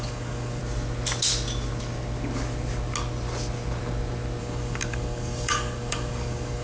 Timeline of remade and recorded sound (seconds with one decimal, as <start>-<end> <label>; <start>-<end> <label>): 0.0-0.6 remade; 0.6-4.4 recorded; 4.4-6.6 remade